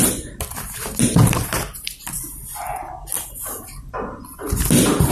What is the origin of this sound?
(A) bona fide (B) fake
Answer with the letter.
A